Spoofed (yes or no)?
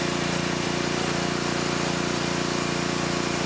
yes